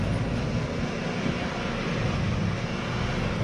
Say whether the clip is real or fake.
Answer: real